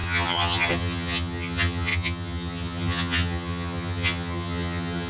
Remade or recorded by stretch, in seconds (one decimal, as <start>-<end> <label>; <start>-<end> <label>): 0.0-5.1 remade